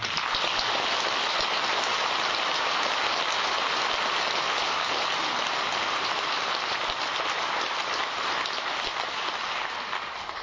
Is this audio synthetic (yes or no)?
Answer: no